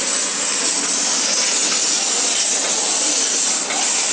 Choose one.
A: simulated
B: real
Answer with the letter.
B